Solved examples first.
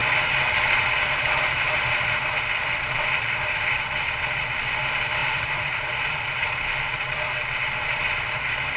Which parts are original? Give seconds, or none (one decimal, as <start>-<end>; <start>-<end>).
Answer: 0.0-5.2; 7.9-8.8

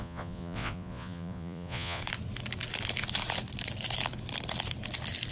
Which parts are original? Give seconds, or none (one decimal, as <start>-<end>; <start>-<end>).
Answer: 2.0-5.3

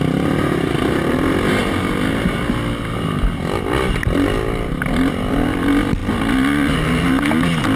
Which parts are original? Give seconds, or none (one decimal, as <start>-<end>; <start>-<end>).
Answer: 0.0-1.6; 2.4-7.8